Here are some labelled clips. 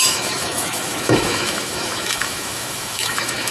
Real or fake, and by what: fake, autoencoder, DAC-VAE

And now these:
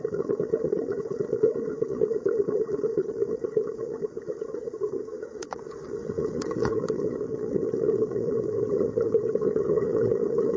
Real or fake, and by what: fake, vocoder, Vocos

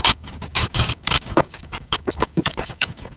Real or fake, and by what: fake, codec, DAC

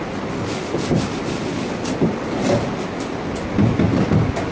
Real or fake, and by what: real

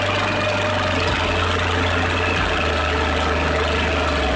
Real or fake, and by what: real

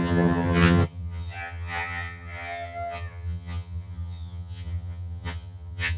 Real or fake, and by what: fake, vocoder, HiFi-GAN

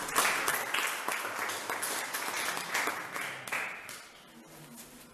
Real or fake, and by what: real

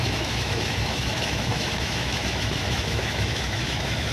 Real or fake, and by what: fake, autoencoder, DAC-VAE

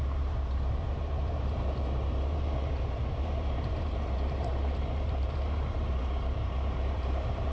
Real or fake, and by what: fake, vocoder, BigVGAN v2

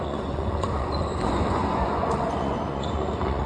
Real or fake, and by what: fake, vocoder, Vocos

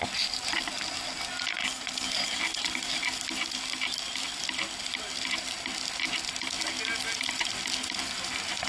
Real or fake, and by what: real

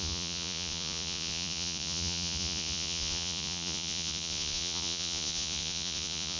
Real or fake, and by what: fake, vocoder, Vocos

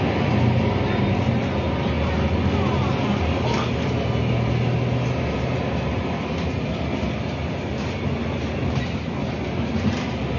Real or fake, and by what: real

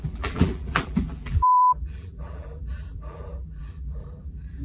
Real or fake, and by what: fake, vocoder, BigVGAN v2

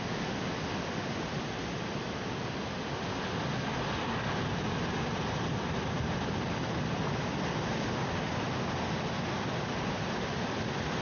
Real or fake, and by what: real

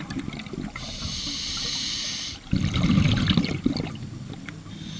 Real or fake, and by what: real